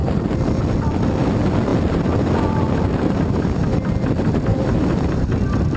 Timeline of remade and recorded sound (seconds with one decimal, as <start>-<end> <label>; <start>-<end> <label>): 0.0-4.5 recorded; 4.5-5.3 remade; 5.3-5.8 recorded